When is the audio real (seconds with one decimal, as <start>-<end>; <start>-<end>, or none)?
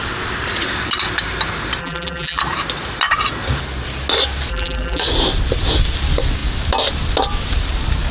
0.0-1.8; 2.4-4.5; 5.0-8.1